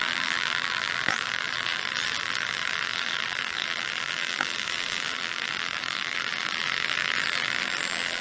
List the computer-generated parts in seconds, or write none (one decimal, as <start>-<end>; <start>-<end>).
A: 0.0-8.2